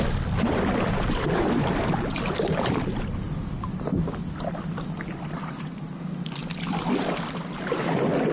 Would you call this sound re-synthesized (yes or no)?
no